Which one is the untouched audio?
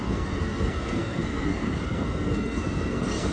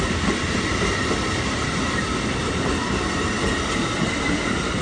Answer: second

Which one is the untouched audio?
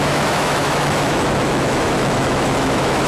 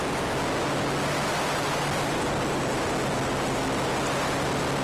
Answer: second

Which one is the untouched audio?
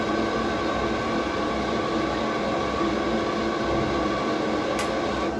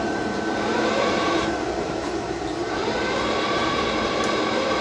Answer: first